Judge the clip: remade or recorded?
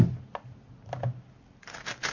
recorded